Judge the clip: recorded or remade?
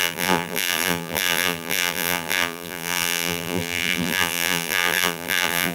remade